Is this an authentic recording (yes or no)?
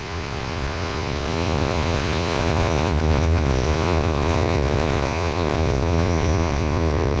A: no